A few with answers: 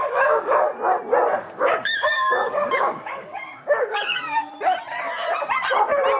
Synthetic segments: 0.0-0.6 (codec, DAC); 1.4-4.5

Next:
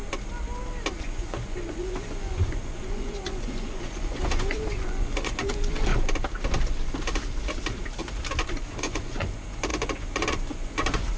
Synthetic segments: 1.0-5.9 (vocoder, Vocos); 8.5-11.2

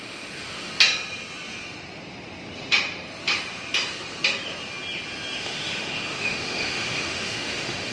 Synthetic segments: 0.0-0.7 (autoencoder, DAC-VAE); 5.4-7.9

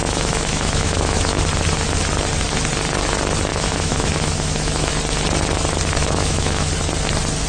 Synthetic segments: 0.0-1.4 (autoencoder, DAC-VAE); 3.5-4.9; 6.0-6.7

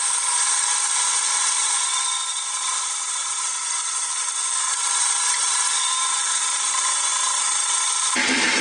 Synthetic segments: 0.0-8.6 (vocoder, BigVGAN v2)

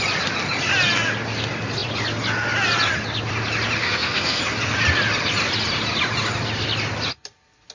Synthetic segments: 3.8-4.4 (codec, SNAC)

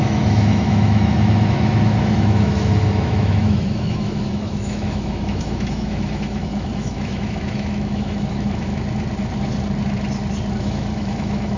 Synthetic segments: 0.0-8.7 (autoencoder, DAC-VAE); 10.6-11.6